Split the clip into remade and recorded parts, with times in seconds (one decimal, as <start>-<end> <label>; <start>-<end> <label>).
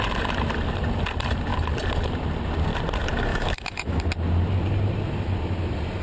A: 0.0-3.3 recorded; 3.3-4.0 remade; 4.0-6.0 recorded